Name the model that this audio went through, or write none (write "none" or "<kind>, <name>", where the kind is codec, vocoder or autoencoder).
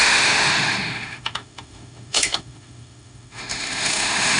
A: autoencoder, DAC-VAE